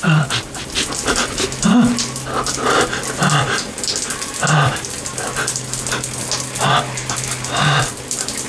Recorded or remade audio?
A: recorded